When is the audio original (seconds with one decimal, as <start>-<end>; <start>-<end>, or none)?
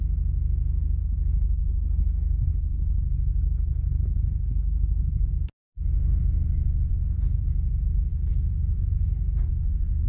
0.0-1.0; 5.3-10.1